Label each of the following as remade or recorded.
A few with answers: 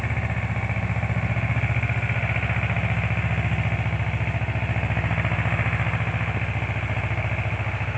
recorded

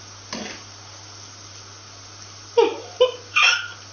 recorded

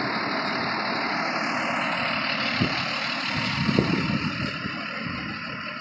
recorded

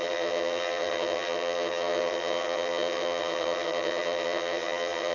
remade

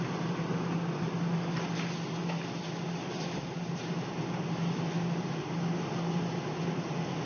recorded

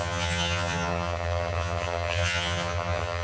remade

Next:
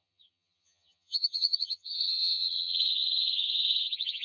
remade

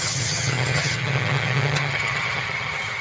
remade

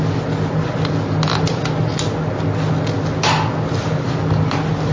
recorded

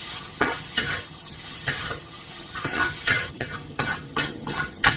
remade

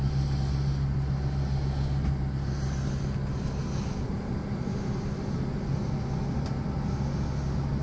recorded